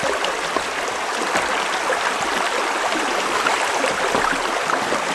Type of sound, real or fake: real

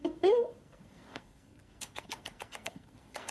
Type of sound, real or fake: fake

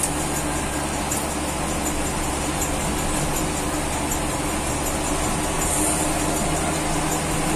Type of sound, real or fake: real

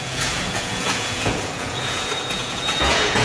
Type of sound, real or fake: fake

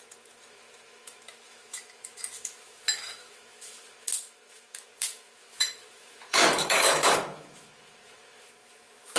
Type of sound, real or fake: fake